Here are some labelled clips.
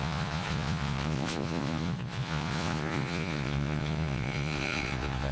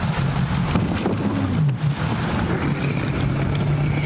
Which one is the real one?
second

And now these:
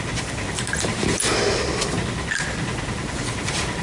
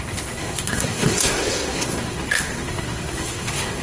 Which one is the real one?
first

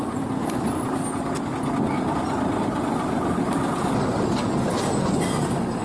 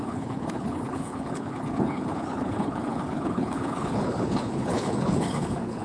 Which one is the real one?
first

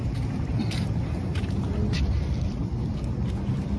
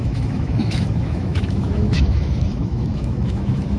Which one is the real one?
first